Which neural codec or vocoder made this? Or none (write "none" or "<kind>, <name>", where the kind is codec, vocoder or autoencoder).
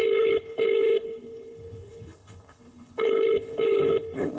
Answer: codec, HILCodec